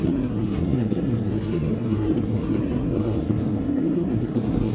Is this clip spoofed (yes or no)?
yes